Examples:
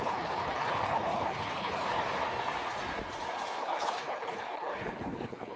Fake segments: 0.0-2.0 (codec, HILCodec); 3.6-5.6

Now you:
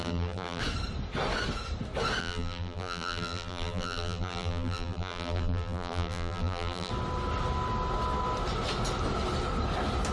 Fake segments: 0.0-0.6 (vocoder, BigVGAN v2); 2.2-6.9

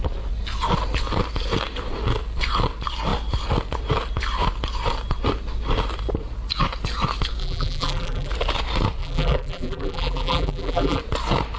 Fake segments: 7.4-8.3 (vocoder, BigVGAN v2); 9.0-11.0

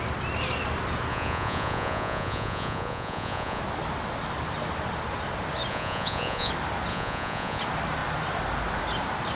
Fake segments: 1.1-3.6 (vocoder, Vocos); 5.7-6.5; 6.9-7.6

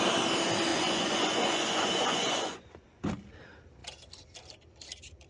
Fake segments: 0.7-3.0 (vocoder, Vocos)

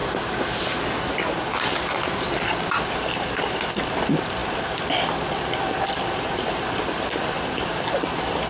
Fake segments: 4.4-7.8 (vocoder, BigVGAN v2)

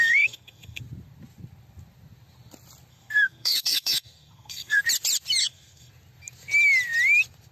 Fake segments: 0.0-0.8 (codec, SNAC); 2.9-4.8; 5.4-5.9

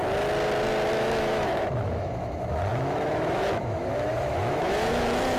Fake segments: 0.9-5.4 (autoencoder, DAC-VAE)